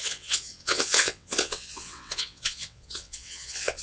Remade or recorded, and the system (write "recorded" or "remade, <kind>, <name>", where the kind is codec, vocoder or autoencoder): remade, vocoder, WaveNeXt